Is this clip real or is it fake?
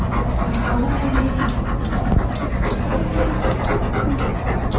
real